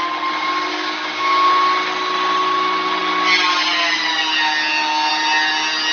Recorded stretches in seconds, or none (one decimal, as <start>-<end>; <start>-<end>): 0.0-0.7; 1.5-5.9